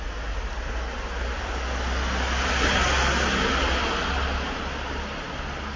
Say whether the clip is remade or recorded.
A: recorded